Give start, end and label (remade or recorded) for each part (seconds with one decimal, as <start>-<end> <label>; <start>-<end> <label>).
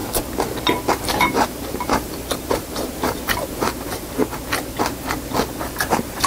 0.0-0.9 recorded; 0.9-4.2 remade; 4.2-5.6 recorded; 5.6-6.3 remade